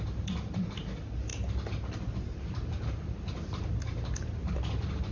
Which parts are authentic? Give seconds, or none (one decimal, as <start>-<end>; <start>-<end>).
0.0-5.1